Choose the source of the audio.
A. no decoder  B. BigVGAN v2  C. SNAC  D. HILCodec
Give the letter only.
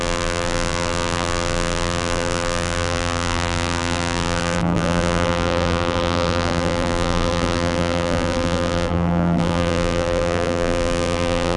B